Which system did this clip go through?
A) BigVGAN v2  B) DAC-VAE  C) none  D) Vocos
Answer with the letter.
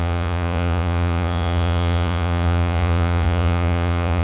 D